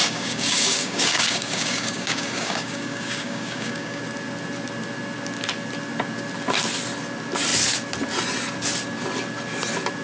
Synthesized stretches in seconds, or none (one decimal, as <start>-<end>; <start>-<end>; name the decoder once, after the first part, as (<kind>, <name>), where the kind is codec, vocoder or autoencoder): 0.0-4.0 (codec, DAC)